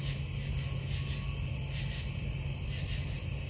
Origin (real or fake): real